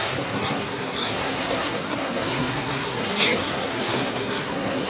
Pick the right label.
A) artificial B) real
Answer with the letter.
A